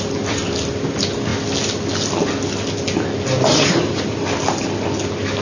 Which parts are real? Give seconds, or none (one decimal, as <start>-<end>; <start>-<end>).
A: 0.0-5.4